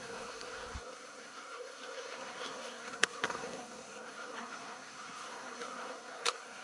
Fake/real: fake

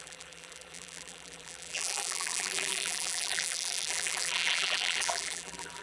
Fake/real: fake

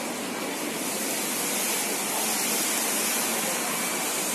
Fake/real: real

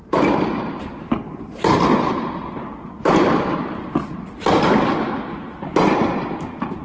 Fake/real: real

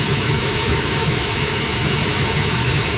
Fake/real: fake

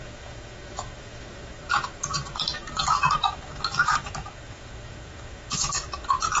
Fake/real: fake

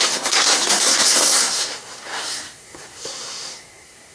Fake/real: fake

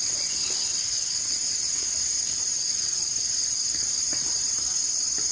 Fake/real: real